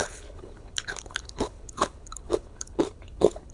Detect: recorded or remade remade